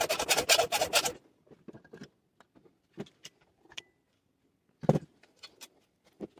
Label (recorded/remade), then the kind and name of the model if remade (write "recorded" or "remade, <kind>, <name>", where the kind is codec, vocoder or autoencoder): recorded